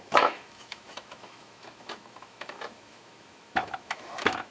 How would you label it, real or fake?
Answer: fake